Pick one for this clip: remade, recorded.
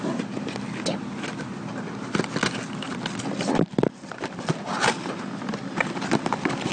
recorded